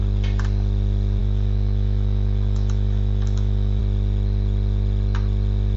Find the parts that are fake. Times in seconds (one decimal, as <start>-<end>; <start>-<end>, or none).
1.2-3.8